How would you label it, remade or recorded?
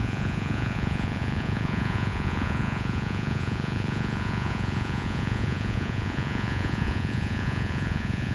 remade